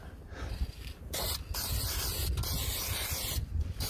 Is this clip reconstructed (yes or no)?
no